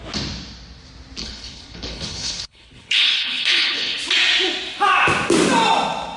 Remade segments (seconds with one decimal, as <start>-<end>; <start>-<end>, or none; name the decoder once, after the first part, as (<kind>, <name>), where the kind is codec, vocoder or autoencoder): 1.2-4.0 (codec, HILCodec)